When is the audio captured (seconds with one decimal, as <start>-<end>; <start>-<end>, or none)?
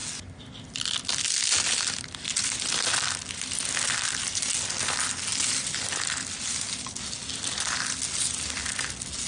0.0-9.3